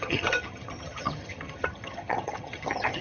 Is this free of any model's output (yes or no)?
no